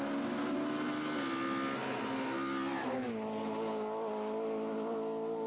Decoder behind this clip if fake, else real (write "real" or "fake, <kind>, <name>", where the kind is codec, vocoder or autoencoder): real